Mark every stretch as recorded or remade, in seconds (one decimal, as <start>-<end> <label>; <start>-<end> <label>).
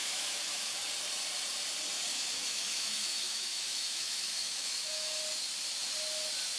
0.0-0.9 remade; 0.9-2.1 recorded; 2.1-5.2 remade; 5.2-6.6 recorded